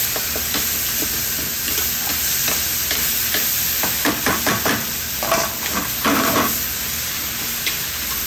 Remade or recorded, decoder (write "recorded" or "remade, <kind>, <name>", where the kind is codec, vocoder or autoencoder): recorded